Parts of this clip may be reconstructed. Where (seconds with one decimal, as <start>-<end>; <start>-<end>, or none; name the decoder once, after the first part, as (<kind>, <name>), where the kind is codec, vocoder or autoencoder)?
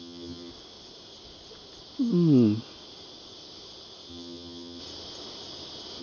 0.0-0.5 (vocoder, HiFi-GAN); 4.1-4.8